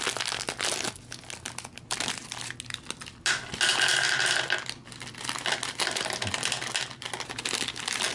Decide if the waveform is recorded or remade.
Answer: recorded